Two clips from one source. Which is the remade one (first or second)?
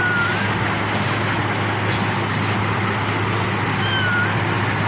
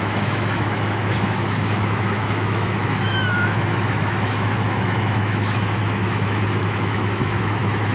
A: second